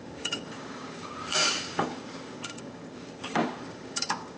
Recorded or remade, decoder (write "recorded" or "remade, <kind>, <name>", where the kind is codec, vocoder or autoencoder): remade, codec, DAC